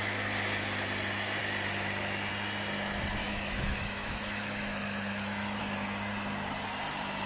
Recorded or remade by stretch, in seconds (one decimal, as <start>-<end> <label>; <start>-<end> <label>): 0.0-3.2 recorded; 3.2-5.6 remade; 5.6-7.3 recorded

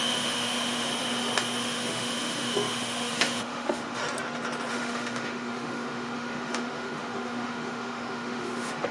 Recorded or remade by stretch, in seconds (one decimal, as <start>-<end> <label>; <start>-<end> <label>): 0.0-0.9 remade; 0.9-1.6 recorded; 1.6-4.0 remade; 4.0-4.7 recorded; 4.7-8.9 remade

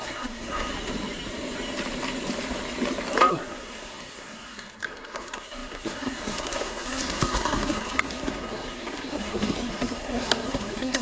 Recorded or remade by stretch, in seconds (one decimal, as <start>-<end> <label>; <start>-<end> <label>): 0.0-0.7 remade; 0.7-3.3 recorded; 3.3-11.0 remade